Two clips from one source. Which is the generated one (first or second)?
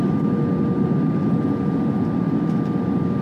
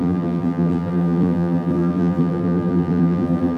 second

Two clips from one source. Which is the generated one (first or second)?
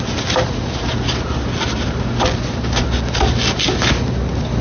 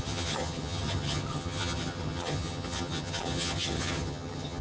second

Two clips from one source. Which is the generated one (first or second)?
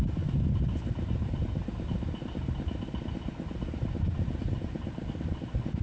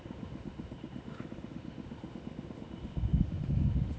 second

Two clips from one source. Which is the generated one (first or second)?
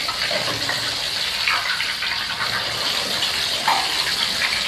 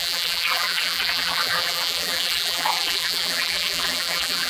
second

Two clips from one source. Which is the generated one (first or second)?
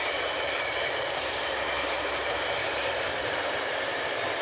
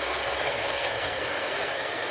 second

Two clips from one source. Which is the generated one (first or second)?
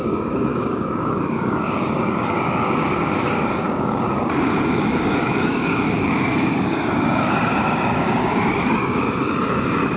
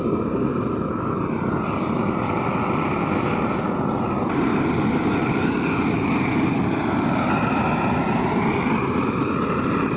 first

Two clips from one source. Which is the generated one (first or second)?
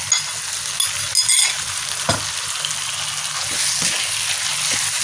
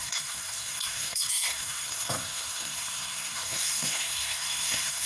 second